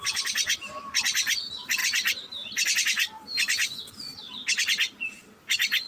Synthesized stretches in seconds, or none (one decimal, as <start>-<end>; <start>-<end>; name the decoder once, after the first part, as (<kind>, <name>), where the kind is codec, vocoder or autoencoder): 1.8-3.2 (vocoder, BigVGAN v2); 4.7-5.2